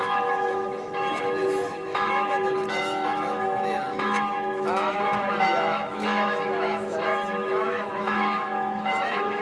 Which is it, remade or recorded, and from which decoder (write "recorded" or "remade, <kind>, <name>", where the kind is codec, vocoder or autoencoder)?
remade, autoencoder, DAC-VAE